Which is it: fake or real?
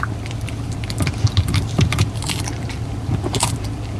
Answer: fake